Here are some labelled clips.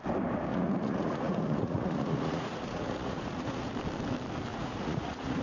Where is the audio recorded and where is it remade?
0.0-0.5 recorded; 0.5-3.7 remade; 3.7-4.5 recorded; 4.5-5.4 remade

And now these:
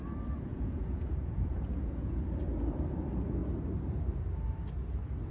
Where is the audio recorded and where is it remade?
0.0-0.5 recorded; 0.5-2.4 remade; 2.4-5.3 recorded

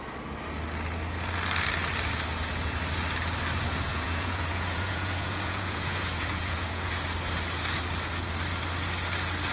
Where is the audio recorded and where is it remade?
0.0-3.9 recorded; 3.9-6.9 remade; 6.9-9.5 recorded

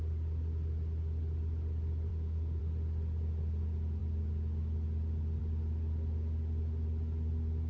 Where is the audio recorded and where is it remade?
0.0-2.1 recorded; 2.1-2.6 remade; 2.6-7.7 recorded

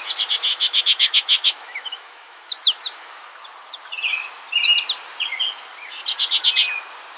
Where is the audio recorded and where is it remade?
0.0-0.5 recorded; 0.5-3.4 remade; 3.4-7.2 recorded